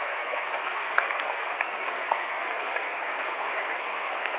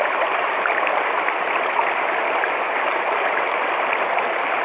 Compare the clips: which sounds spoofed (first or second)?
first